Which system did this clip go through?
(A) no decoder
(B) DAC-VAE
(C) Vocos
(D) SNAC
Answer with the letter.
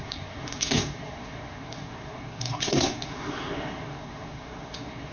D